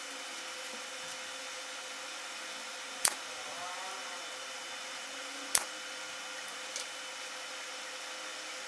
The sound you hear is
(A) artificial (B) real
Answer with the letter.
B